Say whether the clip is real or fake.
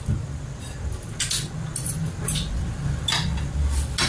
real